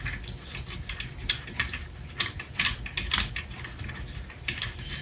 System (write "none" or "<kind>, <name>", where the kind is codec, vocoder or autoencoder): none